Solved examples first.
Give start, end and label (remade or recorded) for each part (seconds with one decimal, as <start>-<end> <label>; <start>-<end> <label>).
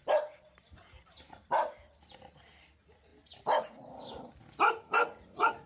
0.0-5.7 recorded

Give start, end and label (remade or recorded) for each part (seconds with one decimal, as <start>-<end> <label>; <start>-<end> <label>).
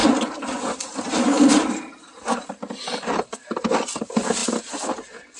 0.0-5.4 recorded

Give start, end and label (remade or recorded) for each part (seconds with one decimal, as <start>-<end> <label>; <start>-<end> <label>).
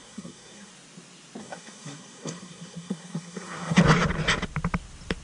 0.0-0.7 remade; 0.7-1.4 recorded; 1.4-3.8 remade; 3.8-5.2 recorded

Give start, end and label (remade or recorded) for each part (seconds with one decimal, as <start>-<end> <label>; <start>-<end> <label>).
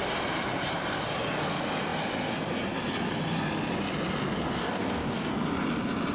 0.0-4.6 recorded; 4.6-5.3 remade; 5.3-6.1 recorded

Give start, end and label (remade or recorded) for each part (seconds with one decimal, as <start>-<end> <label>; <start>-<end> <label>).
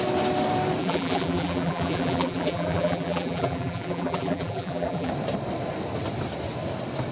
0.0-0.8 recorded; 0.8-5.1 remade; 5.1-7.1 recorded